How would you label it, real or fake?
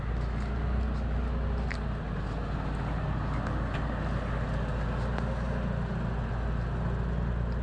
real